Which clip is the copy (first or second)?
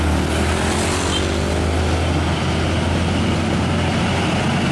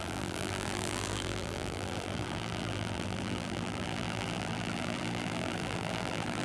second